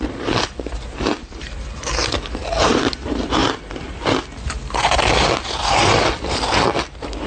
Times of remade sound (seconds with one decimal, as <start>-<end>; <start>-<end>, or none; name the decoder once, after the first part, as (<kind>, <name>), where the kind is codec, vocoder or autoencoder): 0.0-2.0 (vocoder, BigVGAN v2); 2.6-3.4; 5.3-5.8; 6.3-7.3